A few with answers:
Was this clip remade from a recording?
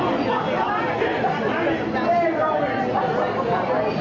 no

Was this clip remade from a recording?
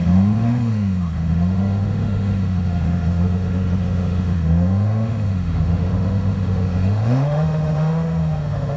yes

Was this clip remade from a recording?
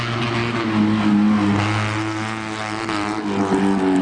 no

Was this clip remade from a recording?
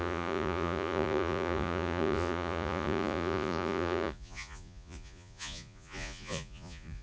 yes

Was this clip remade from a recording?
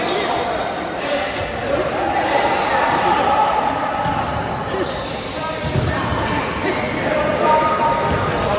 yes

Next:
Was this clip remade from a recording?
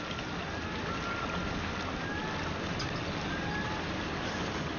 no